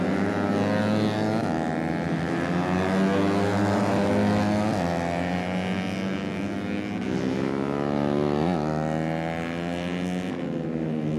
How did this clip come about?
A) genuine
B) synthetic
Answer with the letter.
A